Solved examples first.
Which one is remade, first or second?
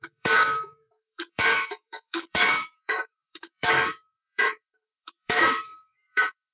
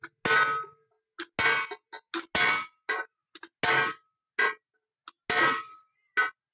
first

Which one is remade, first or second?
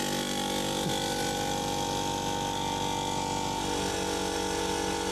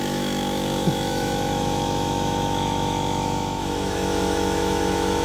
second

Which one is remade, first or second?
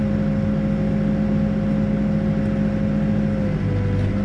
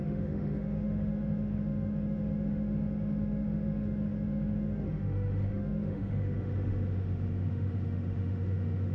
second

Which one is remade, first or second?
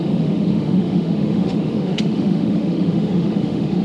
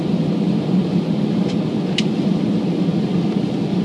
first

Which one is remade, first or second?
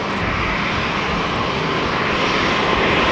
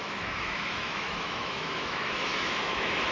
second